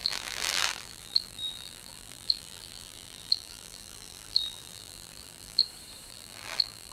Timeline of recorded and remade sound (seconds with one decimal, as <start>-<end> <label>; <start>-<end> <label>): 0.0-5.6 remade; 5.6-6.1 recorded; 6.1-6.9 remade